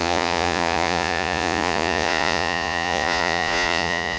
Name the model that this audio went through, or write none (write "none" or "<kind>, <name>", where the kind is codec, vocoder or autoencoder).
vocoder, Vocos